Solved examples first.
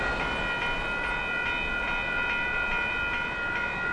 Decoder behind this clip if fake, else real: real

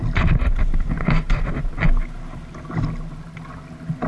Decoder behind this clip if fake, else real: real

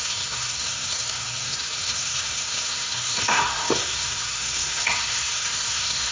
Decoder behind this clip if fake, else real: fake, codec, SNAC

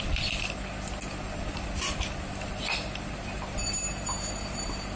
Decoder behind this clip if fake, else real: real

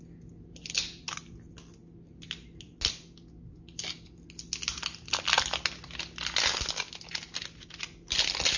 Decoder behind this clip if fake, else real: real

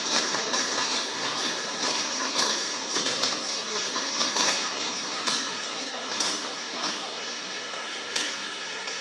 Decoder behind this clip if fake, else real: fake, codec, SNAC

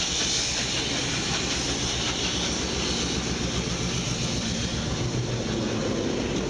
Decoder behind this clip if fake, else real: real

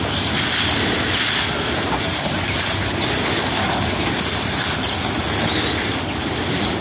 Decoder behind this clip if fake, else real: real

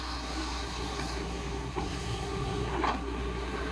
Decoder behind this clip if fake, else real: fake, codec, SNAC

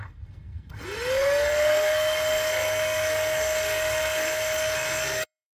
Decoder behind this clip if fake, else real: fake, codec, SNAC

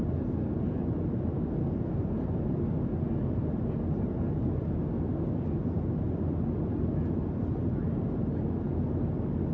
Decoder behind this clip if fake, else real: real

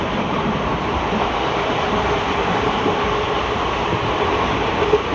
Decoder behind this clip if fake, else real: real